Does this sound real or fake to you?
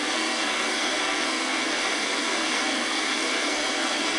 fake